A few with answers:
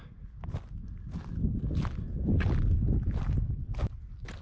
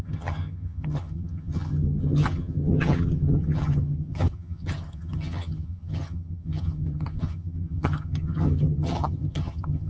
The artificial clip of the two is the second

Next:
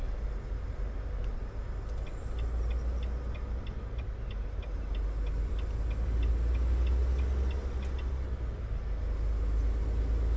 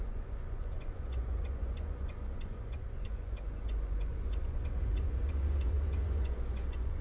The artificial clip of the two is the second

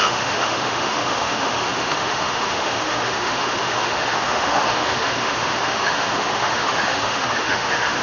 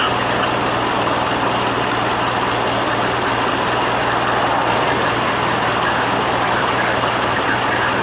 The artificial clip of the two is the first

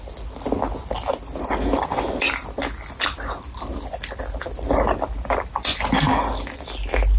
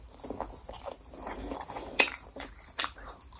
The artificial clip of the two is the second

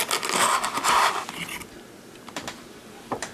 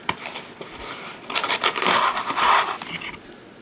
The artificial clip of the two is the second